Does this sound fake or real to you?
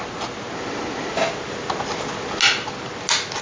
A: real